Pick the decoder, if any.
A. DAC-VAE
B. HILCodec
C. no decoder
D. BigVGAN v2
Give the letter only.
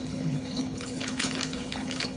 B